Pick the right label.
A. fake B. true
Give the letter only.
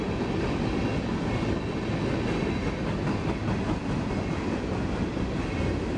B